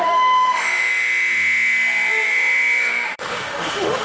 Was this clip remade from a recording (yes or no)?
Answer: yes